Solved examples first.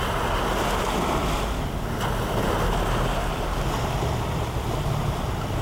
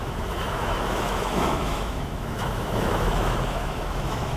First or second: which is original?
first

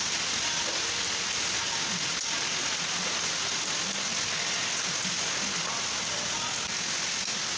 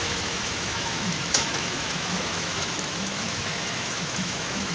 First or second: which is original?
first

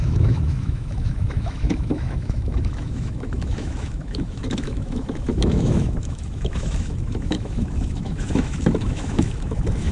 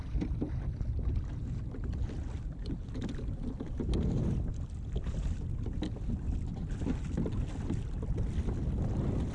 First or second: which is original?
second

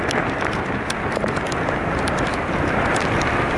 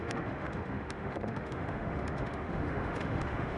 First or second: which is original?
first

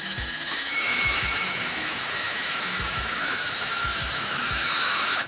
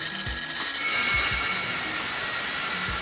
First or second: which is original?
second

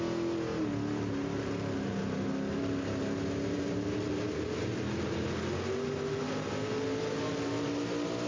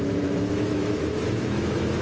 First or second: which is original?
first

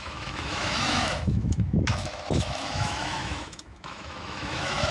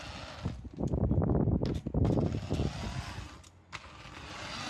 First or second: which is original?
second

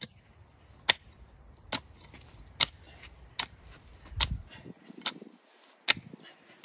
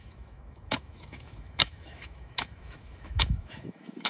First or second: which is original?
first